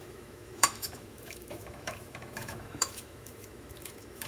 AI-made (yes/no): yes